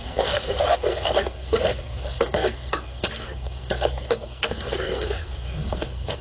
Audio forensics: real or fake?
fake